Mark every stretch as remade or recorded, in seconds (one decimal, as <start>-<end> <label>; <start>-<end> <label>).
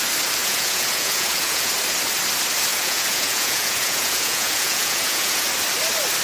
0.0-0.4 recorded; 0.4-1.7 remade; 1.7-2.7 recorded; 2.7-5.5 remade; 5.5-6.2 recorded